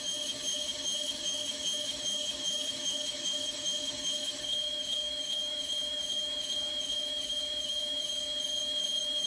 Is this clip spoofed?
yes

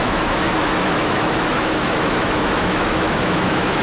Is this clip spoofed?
yes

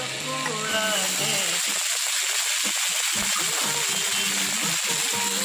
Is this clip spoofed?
no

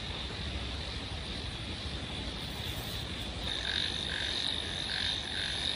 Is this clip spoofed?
no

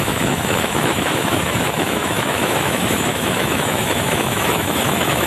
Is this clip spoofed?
yes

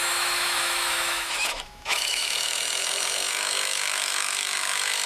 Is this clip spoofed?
yes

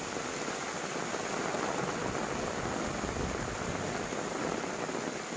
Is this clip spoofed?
no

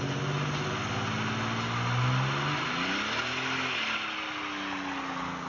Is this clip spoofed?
no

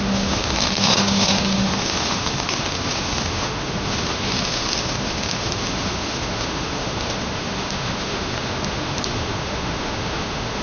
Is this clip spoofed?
yes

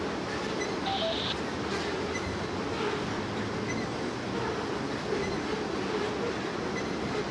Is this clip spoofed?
no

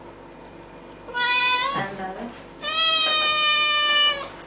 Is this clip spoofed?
no